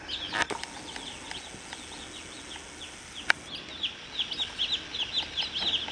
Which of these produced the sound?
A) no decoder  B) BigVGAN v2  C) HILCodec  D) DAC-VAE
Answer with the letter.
A